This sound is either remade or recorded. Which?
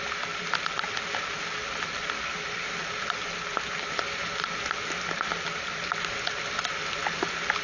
recorded